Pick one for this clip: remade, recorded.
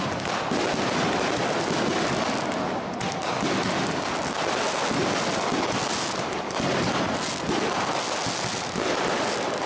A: recorded